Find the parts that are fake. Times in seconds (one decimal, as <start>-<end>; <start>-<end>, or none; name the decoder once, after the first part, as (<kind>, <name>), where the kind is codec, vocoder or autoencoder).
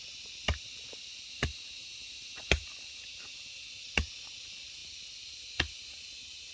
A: none